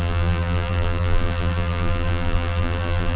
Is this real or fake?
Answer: fake